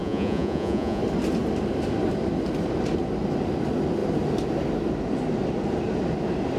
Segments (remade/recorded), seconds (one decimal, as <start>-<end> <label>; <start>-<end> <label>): 0.0-1.0 remade; 1.0-6.6 recorded